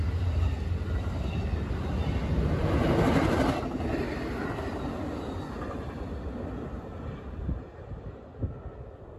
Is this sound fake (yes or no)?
no